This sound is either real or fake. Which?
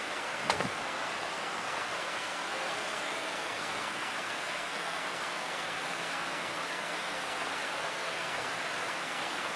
fake